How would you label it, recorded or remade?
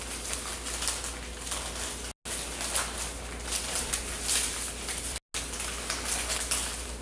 recorded